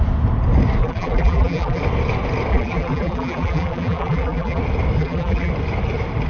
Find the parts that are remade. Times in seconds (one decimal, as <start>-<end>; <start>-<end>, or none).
0.8-1.8; 2.5-4.6; 5.0-5.5